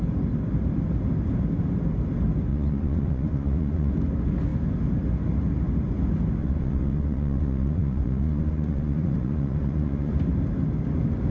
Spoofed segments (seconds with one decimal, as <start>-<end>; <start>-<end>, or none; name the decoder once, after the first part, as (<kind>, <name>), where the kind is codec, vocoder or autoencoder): 2.5-3.9 (vocoder, Vocos); 6.4-10.1